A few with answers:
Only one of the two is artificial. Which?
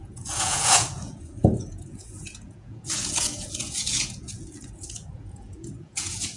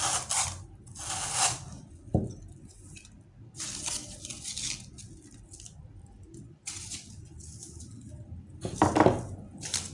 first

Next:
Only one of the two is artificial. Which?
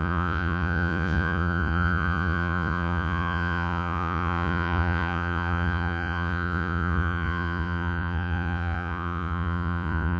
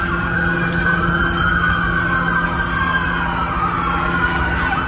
first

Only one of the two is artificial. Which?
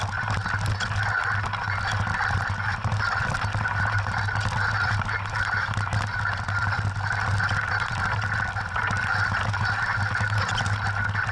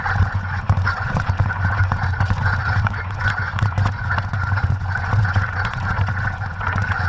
second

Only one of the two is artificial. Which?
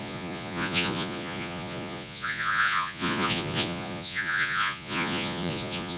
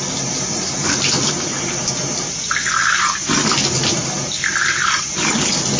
first